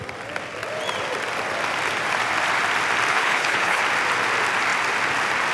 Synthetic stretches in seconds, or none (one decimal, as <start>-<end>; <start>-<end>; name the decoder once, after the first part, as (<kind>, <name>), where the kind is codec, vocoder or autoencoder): 3.1-3.8 (codec, HILCodec)